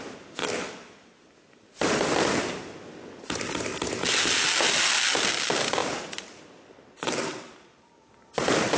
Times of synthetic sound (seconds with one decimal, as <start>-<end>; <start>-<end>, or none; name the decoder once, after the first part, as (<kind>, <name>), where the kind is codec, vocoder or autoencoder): 5.8-8.1 (vocoder, BigVGAN v2)